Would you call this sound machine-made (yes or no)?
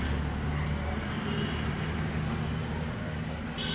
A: no